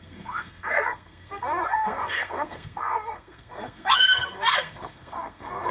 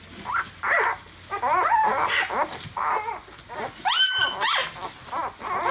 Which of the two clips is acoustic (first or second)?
second